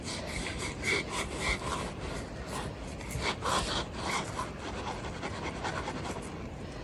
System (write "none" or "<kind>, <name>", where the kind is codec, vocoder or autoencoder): none